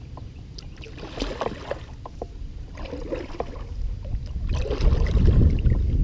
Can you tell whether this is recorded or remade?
recorded